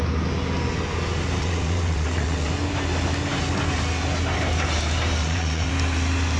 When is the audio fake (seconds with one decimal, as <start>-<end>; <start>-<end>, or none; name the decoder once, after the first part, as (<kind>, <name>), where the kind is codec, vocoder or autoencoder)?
1.4-2.5 (vocoder, WaveNeXt); 5.2-5.7